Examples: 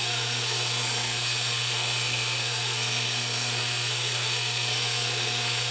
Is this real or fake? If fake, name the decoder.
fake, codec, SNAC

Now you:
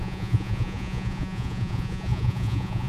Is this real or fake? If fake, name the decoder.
fake, vocoder, Vocos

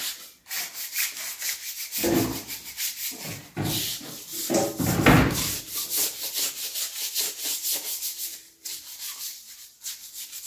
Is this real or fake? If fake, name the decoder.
real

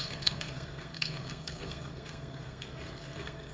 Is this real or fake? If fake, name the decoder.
fake, codec, SNAC